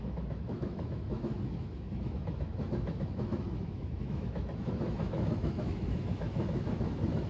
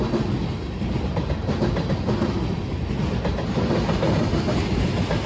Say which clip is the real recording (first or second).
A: second